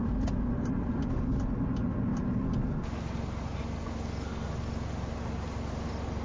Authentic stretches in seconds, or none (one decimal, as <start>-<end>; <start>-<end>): 0.0-6.2